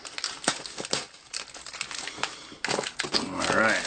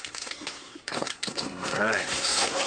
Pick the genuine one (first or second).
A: first